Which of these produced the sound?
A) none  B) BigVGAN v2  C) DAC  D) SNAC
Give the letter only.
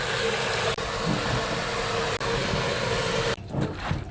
A